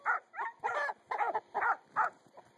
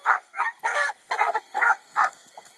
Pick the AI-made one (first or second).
second